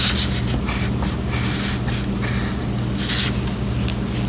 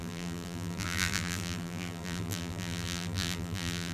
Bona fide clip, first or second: first